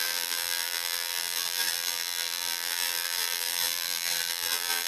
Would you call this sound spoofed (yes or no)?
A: yes